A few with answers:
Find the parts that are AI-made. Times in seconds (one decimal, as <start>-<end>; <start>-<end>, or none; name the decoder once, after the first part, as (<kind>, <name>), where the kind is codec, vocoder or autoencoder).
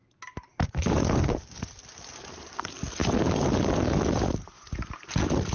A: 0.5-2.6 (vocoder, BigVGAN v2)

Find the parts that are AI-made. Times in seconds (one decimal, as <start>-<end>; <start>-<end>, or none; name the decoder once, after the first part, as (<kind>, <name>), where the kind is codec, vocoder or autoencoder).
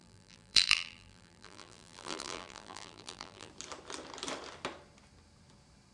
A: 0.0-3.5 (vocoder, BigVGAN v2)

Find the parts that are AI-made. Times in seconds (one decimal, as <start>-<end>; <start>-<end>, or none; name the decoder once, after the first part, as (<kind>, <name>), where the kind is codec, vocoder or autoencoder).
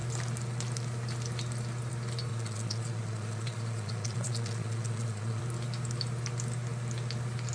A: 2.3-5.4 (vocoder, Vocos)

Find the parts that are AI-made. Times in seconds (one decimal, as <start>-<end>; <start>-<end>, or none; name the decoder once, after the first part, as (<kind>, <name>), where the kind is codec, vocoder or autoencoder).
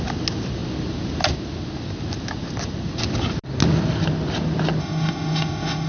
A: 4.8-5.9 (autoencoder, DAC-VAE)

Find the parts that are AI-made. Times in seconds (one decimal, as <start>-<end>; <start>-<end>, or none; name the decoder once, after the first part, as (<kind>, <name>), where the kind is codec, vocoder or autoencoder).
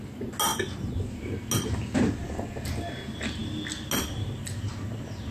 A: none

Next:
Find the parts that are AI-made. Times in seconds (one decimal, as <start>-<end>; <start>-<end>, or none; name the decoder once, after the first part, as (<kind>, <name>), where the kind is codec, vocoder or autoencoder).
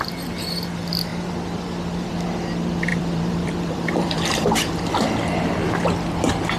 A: 2.9-4.9 (vocoder, BigVGAN v2)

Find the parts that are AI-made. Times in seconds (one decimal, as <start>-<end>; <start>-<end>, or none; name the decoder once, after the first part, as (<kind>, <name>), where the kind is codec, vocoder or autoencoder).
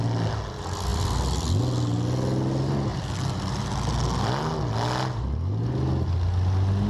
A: none